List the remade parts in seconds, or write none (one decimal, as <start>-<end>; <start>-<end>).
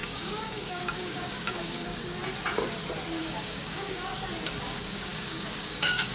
0.0-2.2; 3.2-4.1; 4.6-6.1